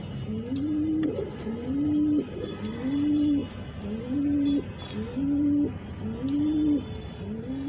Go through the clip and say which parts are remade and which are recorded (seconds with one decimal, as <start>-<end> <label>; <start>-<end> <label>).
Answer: 0.0-7.7 recorded